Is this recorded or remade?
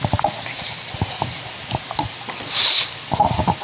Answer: remade